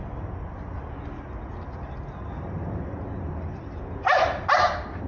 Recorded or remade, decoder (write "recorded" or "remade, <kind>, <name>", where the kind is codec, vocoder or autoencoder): recorded